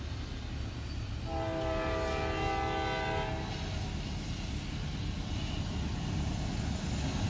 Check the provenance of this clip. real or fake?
real